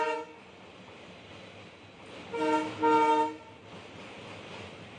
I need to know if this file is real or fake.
real